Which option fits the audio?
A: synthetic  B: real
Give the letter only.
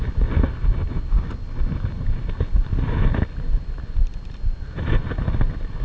B